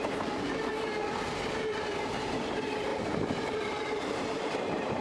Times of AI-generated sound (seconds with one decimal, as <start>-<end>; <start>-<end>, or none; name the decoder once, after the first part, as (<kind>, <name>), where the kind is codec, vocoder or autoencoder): 0.0-0.7 (vocoder, BigVGAN v2); 2.1-5.0